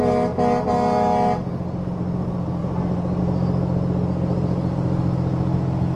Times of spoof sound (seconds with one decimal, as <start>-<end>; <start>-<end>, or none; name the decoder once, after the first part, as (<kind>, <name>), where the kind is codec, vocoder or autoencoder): none